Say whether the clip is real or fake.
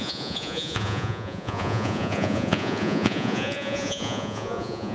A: fake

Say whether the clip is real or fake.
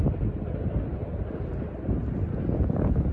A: real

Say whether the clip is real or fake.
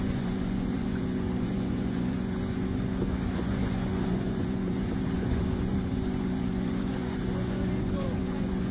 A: fake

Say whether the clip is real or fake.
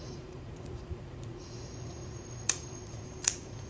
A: fake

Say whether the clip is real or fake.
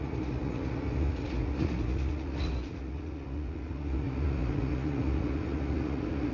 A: fake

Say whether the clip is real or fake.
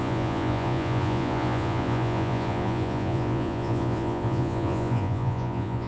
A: fake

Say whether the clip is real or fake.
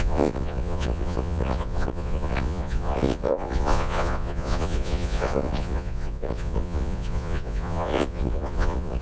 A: fake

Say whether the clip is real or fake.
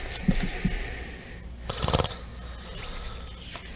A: real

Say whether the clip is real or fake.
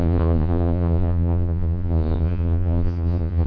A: fake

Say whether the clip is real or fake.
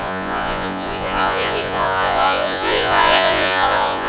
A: fake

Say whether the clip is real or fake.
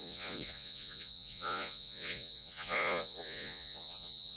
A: fake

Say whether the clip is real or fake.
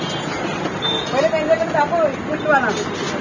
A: real